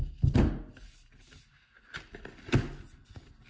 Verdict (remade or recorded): recorded